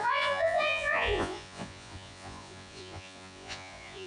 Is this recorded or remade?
remade